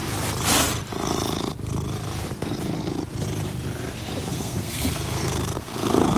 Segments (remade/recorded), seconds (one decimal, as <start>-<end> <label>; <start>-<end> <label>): 0.0-4.3 recorded; 4.3-6.2 remade